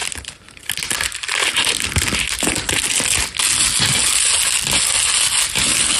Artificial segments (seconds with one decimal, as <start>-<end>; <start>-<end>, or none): none

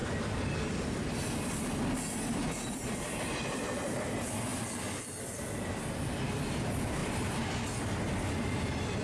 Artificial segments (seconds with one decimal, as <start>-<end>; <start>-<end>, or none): none

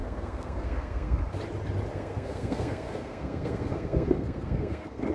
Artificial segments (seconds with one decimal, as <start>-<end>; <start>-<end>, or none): 0.0-1.2; 1.9-5.1

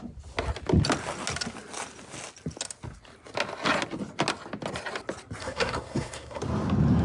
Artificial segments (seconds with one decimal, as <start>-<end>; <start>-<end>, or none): 5.4-6.4

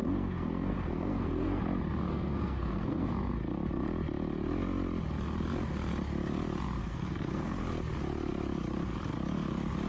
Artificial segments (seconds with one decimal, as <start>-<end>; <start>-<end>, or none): 0.0-1.6; 2.1-3.1; 6.8-7.6

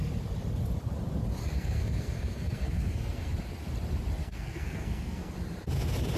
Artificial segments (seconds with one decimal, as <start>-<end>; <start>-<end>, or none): 1.4-3.3; 4.2-5.3

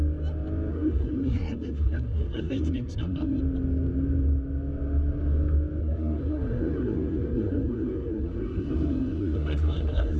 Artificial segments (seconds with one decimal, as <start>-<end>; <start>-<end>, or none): 0.7-3.4; 5.8-10.2

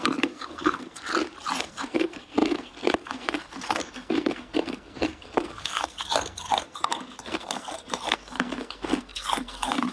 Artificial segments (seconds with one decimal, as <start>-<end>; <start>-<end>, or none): 0.0-1.1; 1.6-9.9